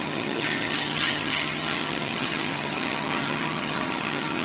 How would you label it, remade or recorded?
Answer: remade